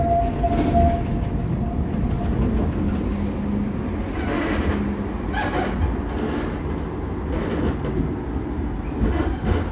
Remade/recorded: recorded